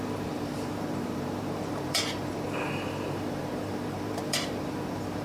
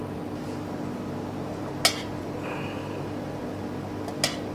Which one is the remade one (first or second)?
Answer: first